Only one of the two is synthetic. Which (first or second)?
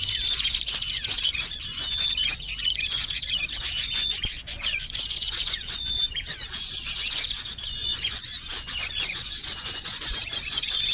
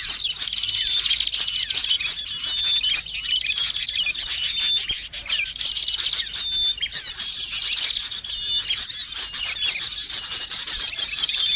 first